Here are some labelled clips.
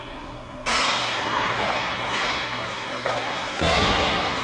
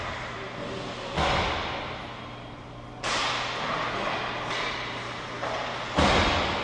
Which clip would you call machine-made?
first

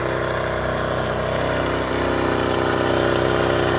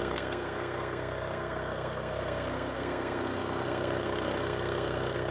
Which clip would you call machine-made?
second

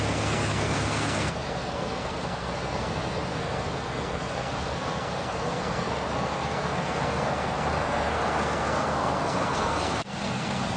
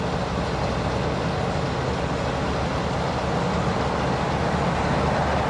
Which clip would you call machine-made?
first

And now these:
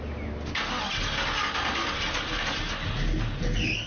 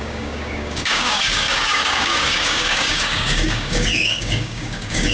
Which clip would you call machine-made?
second